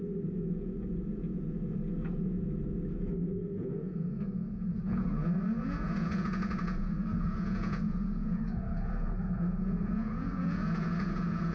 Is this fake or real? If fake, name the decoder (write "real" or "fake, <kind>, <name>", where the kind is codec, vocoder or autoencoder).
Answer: fake, vocoder, Vocos